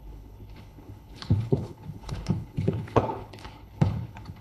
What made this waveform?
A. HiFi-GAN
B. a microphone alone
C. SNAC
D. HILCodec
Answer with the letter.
D